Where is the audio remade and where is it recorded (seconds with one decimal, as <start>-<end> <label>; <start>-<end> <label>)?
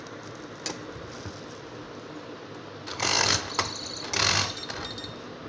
0.0-2.9 recorded; 2.9-3.4 remade; 3.4-5.5 recorded